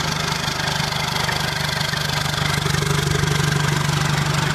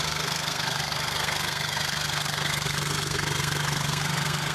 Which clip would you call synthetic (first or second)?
second